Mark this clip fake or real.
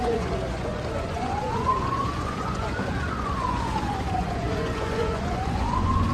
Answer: fake